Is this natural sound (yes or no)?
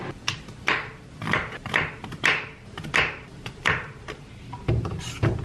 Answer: no